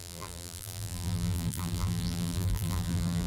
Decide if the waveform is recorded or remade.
remade